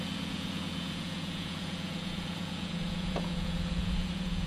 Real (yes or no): no